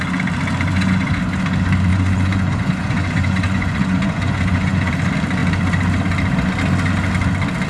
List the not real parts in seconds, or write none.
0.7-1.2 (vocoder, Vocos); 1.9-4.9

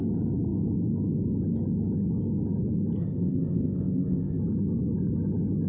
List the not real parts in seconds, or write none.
3.0-4.4 (codec, ZipCodec)

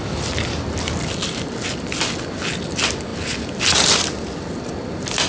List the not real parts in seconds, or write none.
none